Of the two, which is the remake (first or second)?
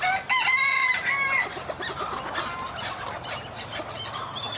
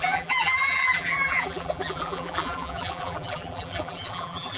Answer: second